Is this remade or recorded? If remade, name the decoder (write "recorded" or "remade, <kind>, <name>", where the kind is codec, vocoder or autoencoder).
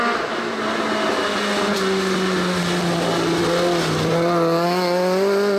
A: recorded